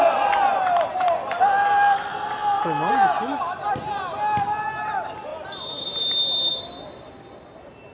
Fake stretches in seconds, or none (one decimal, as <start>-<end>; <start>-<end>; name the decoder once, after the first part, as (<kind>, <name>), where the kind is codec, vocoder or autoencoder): none